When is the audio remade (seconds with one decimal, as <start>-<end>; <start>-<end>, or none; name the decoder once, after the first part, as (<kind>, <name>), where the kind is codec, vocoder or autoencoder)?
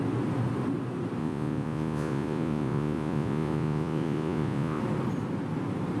1.2-4.8 (vocoder, Vocos)